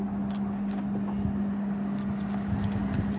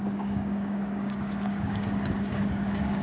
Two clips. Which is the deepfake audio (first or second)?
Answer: second